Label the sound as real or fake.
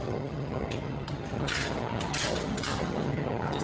fake